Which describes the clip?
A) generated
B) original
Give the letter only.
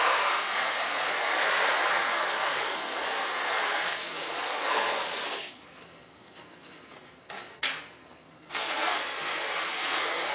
A